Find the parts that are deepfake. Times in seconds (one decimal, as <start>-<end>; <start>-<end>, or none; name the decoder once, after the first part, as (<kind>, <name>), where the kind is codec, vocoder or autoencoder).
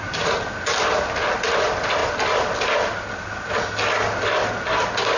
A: none